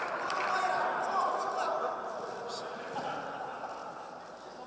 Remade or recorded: recorded